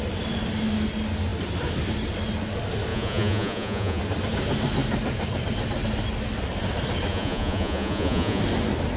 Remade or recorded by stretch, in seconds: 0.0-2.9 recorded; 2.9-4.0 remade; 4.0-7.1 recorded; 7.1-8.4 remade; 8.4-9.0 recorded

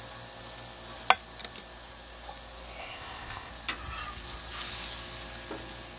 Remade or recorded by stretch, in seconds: 0.0-2.8 recorded; 2.8-3.5 remade; 3.5-6.0 recorded

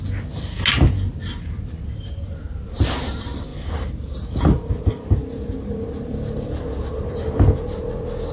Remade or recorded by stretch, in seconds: 0.0-8.3 recorded

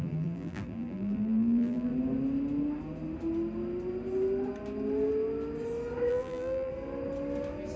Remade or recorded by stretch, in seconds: 0.0-1.9 remade; 1.9-6.1 recorded; 6.1-6.7 remade; 6.7-7.8 recorded